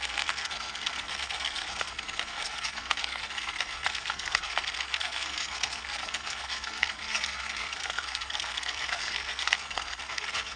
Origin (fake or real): fake